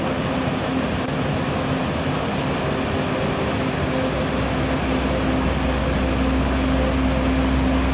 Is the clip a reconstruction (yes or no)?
no